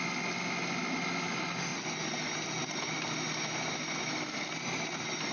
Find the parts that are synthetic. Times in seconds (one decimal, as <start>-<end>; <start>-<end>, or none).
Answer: none